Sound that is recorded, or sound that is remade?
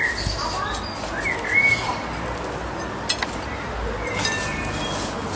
recorded